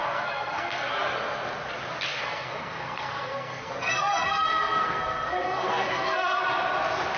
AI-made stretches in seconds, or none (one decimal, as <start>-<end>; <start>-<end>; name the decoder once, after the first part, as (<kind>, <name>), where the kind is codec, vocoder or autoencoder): 0.0-0.9 (codec, SNAC); 2.1-6.4